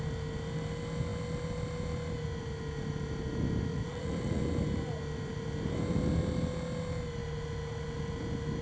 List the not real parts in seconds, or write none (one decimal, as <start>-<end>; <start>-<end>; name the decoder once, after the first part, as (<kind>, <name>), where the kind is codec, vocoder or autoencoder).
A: 3.7-4.4 (vocoder, Vocos)